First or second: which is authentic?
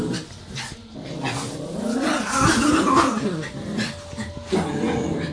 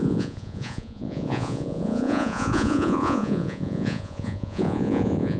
first